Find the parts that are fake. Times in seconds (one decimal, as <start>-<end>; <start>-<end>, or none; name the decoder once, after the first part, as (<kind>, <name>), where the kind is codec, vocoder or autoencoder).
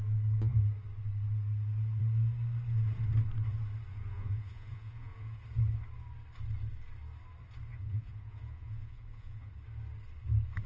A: 3.9-5.4 (vocoder, Vocos); 7.7-9.5